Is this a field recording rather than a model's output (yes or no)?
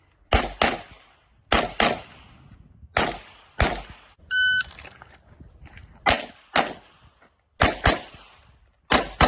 yes